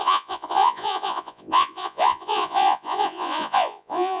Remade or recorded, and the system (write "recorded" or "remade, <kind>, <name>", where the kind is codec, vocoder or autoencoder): remade, vocoder, Vocos